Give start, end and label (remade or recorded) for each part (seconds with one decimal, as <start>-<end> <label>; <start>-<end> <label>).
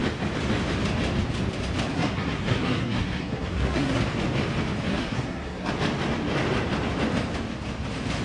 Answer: 0.0-1.9 recorded; 1.9-4.0 remade; 4.0-4.9 recorded; 4.9-5.7 remade; 5.7-8.2 recorded